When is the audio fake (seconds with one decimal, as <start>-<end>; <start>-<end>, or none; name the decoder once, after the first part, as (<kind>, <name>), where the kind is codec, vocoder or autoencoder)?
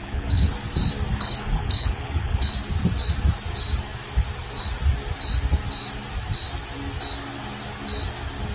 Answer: 0.0-0.5 (codec, HILCodec); 1.1-2.5